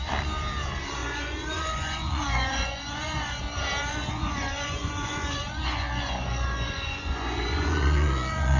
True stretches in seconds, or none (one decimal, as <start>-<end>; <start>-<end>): 0.0-1.0; 3.4-3.8